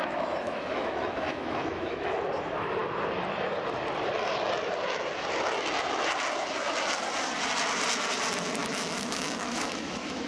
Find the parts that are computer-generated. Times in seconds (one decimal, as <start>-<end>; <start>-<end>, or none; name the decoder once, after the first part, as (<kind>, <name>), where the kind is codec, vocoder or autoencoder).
0.0-2.2 (autoencoder, DAC-VAE); 8.6-10.3